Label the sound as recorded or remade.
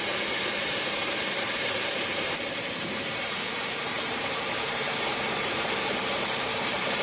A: remade